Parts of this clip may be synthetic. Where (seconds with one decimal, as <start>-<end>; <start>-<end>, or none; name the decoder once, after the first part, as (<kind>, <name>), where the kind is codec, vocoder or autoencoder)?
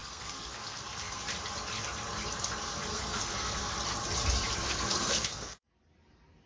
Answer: 0.0-1.2 (codec, SNAC); 2.9-3.7; 4.6-5.7